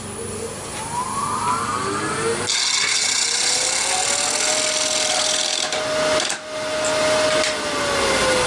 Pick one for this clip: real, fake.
real